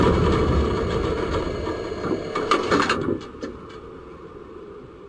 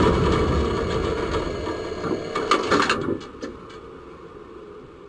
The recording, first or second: second